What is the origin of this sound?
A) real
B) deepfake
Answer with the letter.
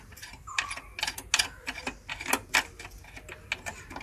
A